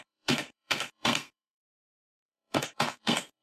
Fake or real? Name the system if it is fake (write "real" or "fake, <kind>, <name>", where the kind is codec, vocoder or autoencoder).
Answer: fake, codec, SNAC